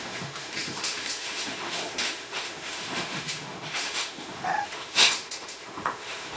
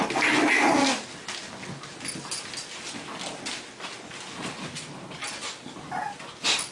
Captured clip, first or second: second